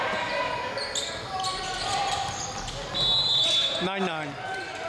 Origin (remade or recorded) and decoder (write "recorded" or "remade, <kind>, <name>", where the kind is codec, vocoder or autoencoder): recorded